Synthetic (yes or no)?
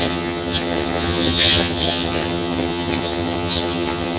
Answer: yes